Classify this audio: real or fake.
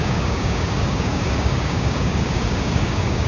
fake